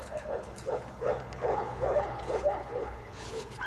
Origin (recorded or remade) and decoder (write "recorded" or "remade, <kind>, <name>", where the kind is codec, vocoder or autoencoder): remade, codec, HILCodec